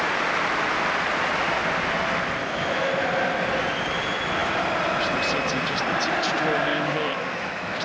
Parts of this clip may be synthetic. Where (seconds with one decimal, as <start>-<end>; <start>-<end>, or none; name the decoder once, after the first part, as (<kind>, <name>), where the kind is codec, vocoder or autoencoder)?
2.4-2.9 (autoencoder, DAC-VAE); 6.7-7.8